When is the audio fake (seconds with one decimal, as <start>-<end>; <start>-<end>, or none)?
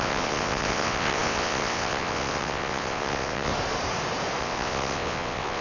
0.0-3.5; 4.4-5.6